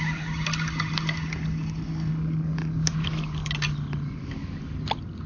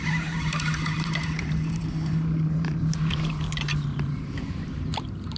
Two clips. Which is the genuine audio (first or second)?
first